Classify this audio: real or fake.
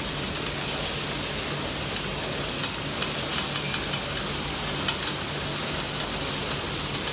real